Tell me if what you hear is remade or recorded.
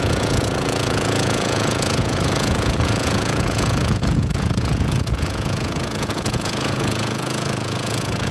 remade